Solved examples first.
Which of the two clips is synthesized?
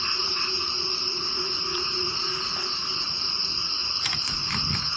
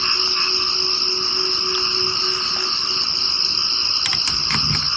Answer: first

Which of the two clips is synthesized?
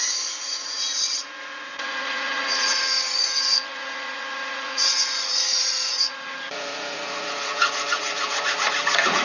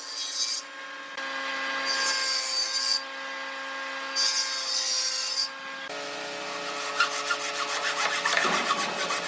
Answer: first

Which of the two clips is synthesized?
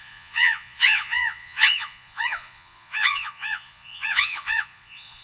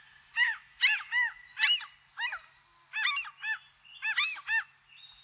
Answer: first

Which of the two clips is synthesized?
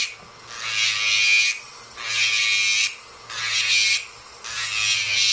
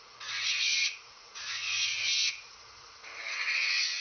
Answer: second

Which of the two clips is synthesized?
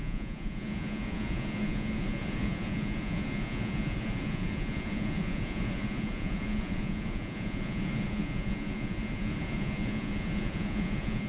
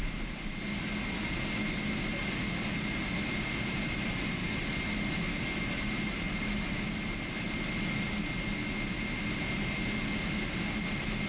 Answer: first